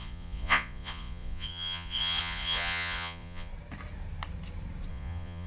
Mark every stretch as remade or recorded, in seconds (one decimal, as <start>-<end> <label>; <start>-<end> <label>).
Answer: 0.0-3.5 remade; 3.5-4.9 recorded; 4.9-5.5 remade